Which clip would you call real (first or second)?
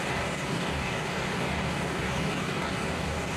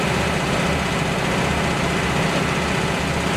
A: second